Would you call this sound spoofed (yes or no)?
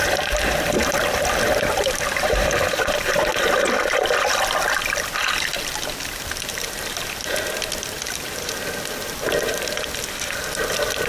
yes